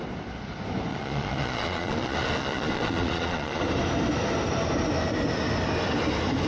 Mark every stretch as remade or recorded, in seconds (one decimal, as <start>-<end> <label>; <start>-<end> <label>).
0.0-0.9 recorded; 0.9-3.6 remade; 3.6-6.5 recorded